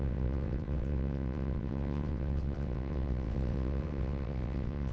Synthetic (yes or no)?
yes